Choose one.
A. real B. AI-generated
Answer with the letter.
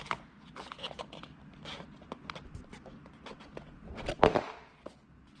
A